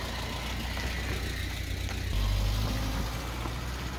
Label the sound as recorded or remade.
recorded